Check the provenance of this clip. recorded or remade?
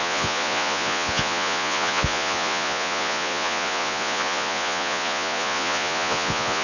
remade